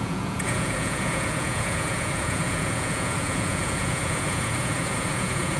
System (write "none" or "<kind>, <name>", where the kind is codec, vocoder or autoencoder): vocoder, Vocos